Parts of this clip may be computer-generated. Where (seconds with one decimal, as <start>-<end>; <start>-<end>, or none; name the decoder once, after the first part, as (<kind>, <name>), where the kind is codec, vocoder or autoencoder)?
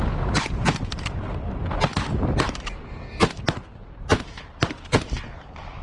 1.9-2.6 (vocoder, BigVGAN v2); 3.8-5.0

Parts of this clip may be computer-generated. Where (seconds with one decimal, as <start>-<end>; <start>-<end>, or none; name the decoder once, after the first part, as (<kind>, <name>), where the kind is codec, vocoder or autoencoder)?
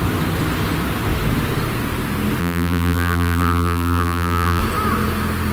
2.4-4.6 (vocoder, BigVGAN v2)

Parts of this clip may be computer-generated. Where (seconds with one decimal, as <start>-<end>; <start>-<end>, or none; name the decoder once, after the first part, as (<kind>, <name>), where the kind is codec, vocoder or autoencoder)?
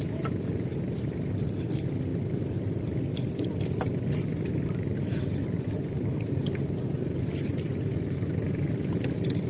0.7-1.5 (vocoder, BigVGAN v2); 2.1-7.2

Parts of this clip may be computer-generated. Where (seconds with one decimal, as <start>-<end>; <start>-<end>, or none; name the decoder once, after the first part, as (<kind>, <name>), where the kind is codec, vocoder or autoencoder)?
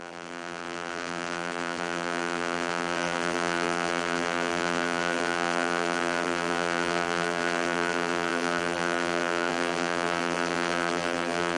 0.0-11.6 (vocoder, BigVGAN v2)